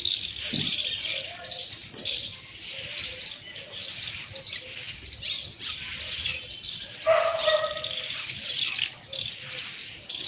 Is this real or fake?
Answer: real